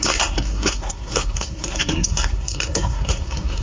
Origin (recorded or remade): remade